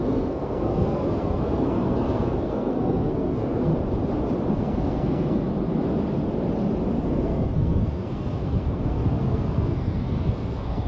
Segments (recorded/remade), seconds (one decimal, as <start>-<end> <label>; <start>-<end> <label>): 0.0-3.7 remade; 3.7-4.5 recorded; 4.5-5.5 remade; 5.5-7.1 recorded; 7.1-10.9 remade